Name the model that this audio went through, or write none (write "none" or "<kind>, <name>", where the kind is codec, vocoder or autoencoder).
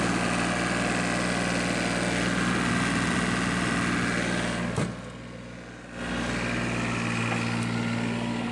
none